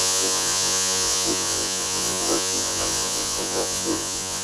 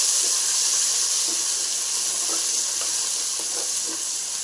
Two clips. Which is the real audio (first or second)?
second